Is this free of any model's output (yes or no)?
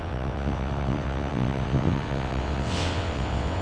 no